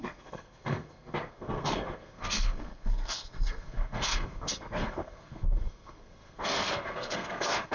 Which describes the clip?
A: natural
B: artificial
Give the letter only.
B